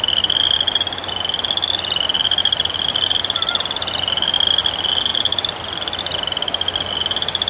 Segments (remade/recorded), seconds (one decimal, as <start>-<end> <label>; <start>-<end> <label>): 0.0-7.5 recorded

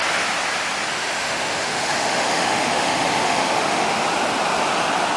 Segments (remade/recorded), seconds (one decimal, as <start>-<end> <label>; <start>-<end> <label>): 0.0-0.9 recorded; 0.9-4.0 remade; 4.0-5.2 recorded

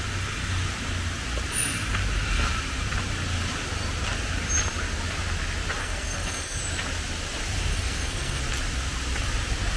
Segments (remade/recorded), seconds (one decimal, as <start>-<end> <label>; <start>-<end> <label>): 0.0-5.8 recorded; 5.8-6.6 remade; 6.6-7.7 recorded; 7.7-8.4 remade; 8.4-9.8 recorded

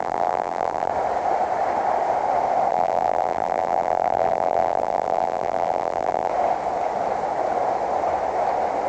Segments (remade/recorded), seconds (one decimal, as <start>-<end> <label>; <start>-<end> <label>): 0.0-0.9 remade; 0.9-2.7 recorded; 2.7-6.3 remade; 6.3-8.9 recorded

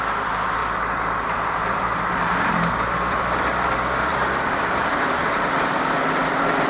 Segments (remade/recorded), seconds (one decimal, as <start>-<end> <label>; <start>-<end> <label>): 0.0-6.7 remade